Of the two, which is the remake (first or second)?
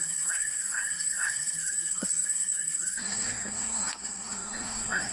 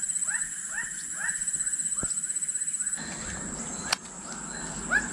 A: first